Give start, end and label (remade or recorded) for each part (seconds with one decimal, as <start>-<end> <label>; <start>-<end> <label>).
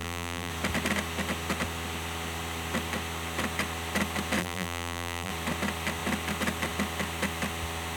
0.0-0.5 remade; 0.5-4.4 recorded; 4.4-5.3 remade; 5.3-8.0 recorded